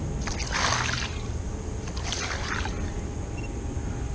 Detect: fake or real real